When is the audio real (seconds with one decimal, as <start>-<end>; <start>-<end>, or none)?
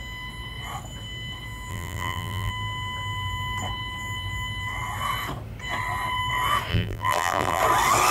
0.0-1.7; 2.5-6.7; 7.6-8.1